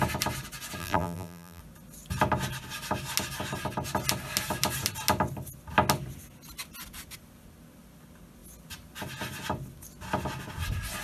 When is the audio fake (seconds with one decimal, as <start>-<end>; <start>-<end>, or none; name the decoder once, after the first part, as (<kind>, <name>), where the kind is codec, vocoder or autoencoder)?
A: 0.8-1.6 (vocoder, BigVGAN v2)